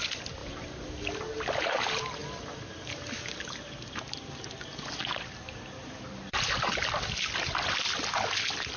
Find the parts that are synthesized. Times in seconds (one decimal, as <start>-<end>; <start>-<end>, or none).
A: none